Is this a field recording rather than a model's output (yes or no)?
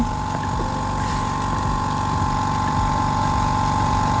yes